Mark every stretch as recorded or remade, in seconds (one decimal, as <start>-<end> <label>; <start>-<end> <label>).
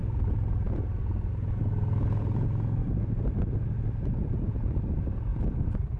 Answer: 0.0-2.8 recorded; 2.8-3.6 remade; 3.6-5.3 recorded; 5.3-6.0 remade